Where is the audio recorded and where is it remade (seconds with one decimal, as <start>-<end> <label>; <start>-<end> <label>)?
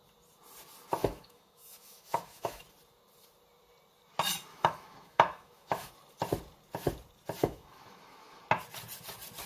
0.0-1.0 recorded; 1.0-2.6 remade; 2.6-4.5 recorded; 4.5-5.9 remade; 5.9-7.4 recorded; 7.4-8.4 remade; 8.4-9.5 recorded